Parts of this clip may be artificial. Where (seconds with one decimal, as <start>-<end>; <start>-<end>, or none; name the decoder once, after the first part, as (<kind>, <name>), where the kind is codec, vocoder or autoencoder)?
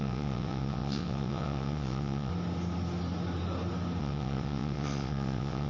0.0-2.3 (vocoder, WaveNeXt); 4.0-5.7